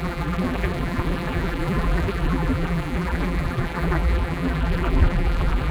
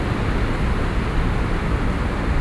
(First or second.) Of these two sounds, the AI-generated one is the first